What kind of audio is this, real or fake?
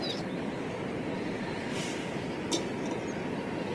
real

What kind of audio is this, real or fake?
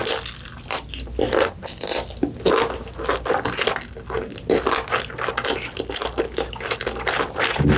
real